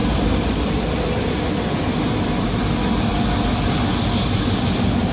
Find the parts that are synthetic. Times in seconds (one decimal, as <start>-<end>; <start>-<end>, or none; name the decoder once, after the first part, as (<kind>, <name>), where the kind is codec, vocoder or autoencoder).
none